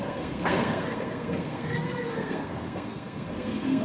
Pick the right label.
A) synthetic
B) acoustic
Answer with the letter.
A